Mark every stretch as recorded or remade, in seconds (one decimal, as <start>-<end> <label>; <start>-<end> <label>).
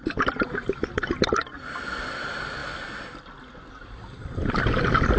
0.0-5.2 recorded